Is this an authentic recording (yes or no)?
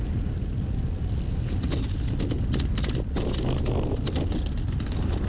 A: yes